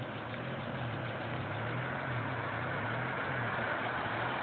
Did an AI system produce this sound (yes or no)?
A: no